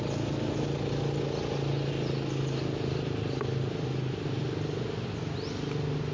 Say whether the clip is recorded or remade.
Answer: recorded